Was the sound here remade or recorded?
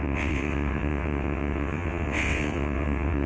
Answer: remade